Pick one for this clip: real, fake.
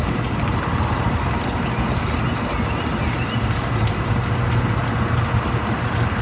real